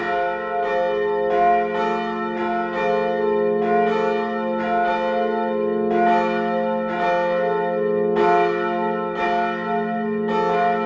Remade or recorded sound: recorded